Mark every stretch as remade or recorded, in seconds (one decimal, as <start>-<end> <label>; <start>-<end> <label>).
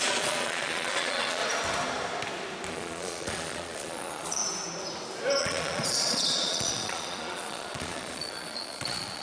0.0-1.4 remade; 1.4-2.7 recorded; 2.7-4.4 remade; 4.4-5.4 recorded; 5.4-9.2 remade